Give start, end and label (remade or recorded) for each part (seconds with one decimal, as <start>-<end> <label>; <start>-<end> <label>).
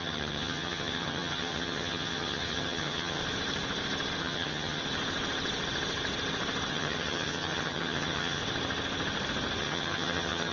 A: 0.0-3.2 remade; 3.2-4.2 recorded; 4.2-4.8 remade; 4.8-6.7 recorded; 6.7-8.4 remade; 8.4-9.6 recorded; 9.6-10.5 remade